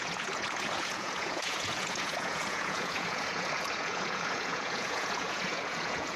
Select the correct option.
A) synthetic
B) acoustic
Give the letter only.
A